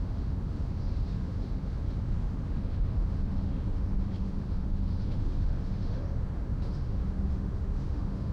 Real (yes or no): no